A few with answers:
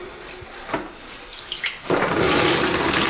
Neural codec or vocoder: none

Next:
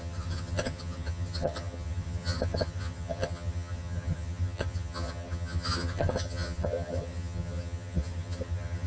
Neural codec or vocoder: vocoder, HiFi-GAN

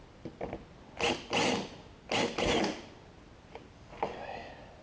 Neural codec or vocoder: none